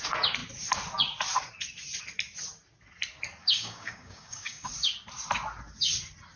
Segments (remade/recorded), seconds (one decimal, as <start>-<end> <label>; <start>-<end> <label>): 0.0-3.4 recorded; 3.4-4.7 remade; 4.7-6.4 recorded